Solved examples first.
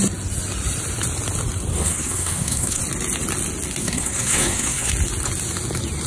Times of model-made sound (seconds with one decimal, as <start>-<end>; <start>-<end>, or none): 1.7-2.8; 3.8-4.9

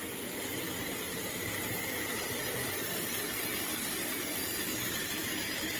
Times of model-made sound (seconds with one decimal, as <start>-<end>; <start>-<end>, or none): none

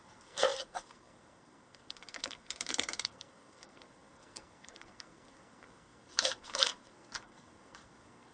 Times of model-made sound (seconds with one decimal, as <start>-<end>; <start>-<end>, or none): 0.0-8.3

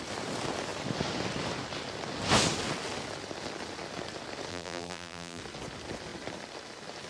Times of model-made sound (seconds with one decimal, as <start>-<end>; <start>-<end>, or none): 4.5-5.4

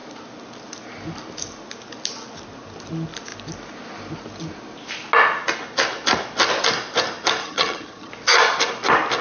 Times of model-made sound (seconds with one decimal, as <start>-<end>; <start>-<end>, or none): 7.4-8.1